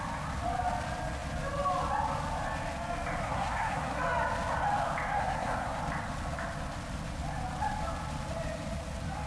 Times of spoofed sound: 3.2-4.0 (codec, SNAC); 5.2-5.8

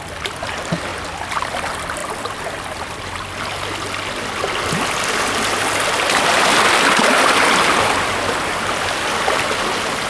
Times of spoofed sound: none

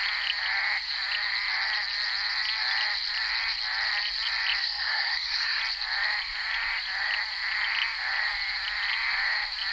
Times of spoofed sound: 4.6-5.6 (codec, SNAC)

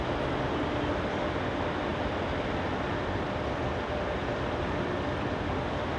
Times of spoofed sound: 1.9-5.5 (vocoder, BigVGAN v2)